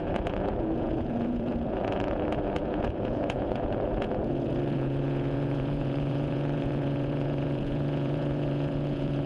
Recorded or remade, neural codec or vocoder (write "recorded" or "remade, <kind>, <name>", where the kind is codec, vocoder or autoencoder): remade, vocoder, Vocos